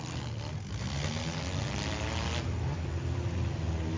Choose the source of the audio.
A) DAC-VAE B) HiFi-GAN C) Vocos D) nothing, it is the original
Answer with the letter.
D